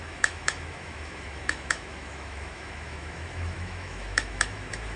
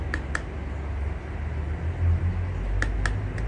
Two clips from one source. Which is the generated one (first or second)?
first